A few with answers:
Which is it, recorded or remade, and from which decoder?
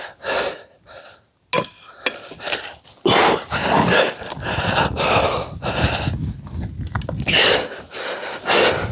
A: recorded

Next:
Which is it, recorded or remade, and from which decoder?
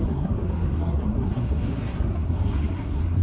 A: remade, codec, SNAC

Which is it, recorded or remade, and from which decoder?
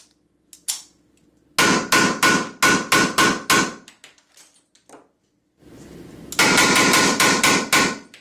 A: recorded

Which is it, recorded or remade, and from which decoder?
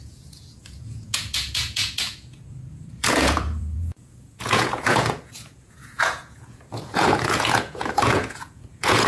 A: remade, vocoder, Vocos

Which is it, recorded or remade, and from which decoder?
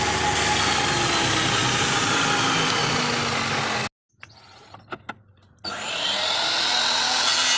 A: recorded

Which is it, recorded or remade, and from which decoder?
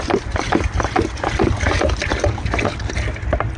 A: recorded